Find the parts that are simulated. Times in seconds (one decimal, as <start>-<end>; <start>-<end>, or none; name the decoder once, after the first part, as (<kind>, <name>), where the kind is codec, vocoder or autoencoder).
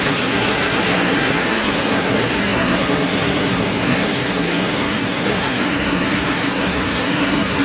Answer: 0.0-7.6 (codec, SNAC)